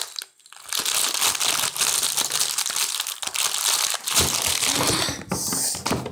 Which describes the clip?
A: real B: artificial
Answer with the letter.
A